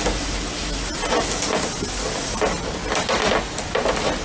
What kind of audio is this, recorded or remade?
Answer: recorded